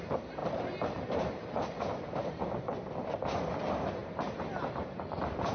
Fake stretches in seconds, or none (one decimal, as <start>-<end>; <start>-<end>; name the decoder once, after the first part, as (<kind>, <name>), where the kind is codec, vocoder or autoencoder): 0.0-5.5 (vocoder, BigVGAN v2)